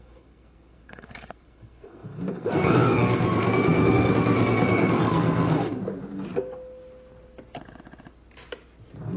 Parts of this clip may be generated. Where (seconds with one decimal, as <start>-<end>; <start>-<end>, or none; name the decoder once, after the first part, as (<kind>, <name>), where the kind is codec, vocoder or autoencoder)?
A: 0.0-5.8 (codec, SNAC)